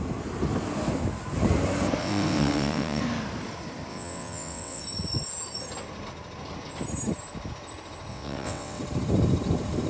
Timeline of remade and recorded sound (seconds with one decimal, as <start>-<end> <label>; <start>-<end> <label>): 0.0-2.0 recorded; 2.0-3.0 remade; 3.0-3.9 recorded; 3.9-4.8 remade; 4.8-8.1 recorded; 8.1-8.8 remade; 8.8-9.9 recorded